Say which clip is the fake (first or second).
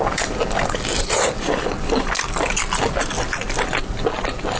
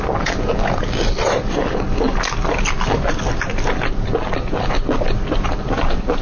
first